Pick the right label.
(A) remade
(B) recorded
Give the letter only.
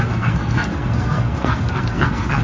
A